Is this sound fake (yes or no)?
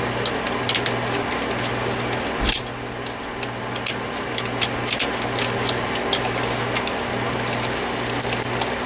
no